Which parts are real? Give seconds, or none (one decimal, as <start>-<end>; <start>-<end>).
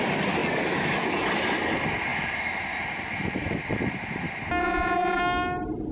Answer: 0.0-4.6; 5.2-5.9